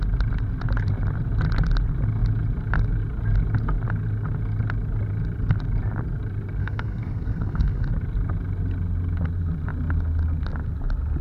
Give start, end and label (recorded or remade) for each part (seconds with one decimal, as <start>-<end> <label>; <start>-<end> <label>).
0.0-6.6 recorded; 6.6-7.9 remade; 7.9-11.2 recorded